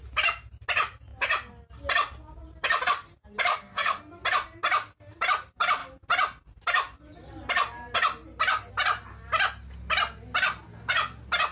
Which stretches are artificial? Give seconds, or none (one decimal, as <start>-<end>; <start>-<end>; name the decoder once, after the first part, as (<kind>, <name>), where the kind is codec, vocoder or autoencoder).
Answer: 3.5-4.1 (codec, SNAC)